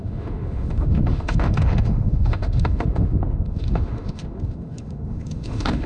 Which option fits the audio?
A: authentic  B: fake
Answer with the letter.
B